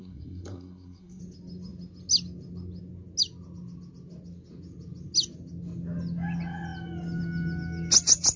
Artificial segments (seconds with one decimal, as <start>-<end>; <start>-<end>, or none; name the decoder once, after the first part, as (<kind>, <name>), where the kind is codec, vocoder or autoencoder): 0.0-1.2 (codec, SNAC)